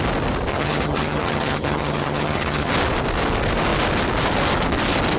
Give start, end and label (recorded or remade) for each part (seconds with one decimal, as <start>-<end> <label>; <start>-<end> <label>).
0.0-0.5 recorded; 0.5-2.7 remade; 2.7-5.2 recorded